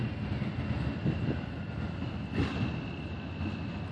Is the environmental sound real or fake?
real